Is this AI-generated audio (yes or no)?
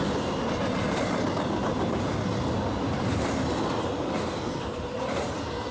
no